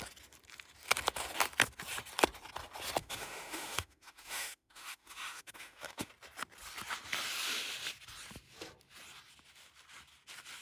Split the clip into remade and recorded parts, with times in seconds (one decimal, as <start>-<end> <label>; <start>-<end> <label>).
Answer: 0.0-3.0 recorded; 3.0-6.1 remade; 6.1-10.6 recorded